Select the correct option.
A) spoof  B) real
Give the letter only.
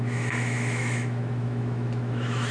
A